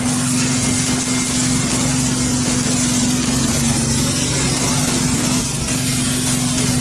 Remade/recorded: recorded